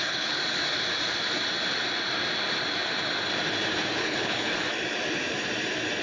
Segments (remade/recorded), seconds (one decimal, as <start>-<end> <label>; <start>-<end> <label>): 0.0-0.4 remade; 0.4-4.0 recorded; 4.0-4.5 remade; 4.5-6.0 recorded